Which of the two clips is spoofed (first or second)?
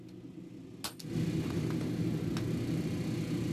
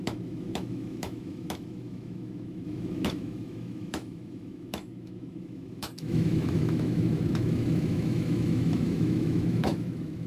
second